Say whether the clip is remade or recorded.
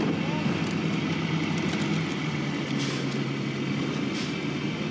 recorded